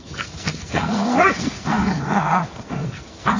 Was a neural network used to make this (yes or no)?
yes